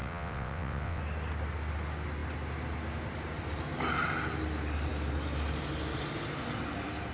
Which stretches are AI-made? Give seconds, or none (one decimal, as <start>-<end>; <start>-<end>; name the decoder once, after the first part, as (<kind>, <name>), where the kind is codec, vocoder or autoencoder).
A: 0.0-1.0 (vocoder, WaveNeXt)